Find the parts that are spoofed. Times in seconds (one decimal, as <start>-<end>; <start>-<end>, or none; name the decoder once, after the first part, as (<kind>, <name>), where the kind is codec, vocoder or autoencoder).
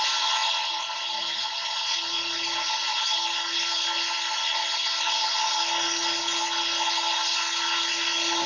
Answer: none